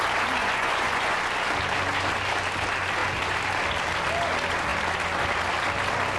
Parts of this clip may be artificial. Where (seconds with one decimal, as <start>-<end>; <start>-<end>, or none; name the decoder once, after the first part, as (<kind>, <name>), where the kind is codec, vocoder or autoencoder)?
0.4-1.2 (vocoder, Vocos)